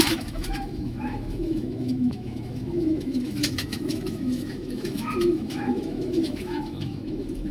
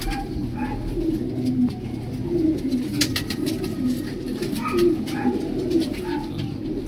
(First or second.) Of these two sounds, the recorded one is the second